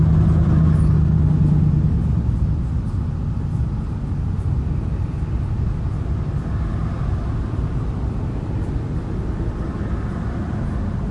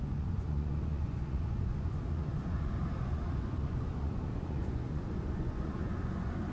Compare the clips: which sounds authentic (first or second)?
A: first